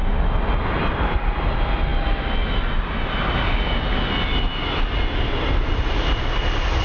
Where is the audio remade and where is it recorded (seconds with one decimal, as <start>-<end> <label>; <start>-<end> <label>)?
0.0-6.8 recorded